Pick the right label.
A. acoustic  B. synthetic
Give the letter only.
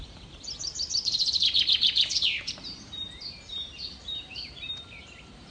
B